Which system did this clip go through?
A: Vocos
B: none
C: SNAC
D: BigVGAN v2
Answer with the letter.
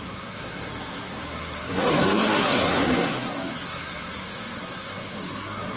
C